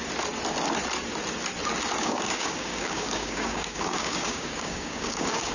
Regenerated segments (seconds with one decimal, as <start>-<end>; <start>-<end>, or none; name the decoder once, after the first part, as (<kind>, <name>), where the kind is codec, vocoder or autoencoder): 2.0-5.5 (codec, DAC)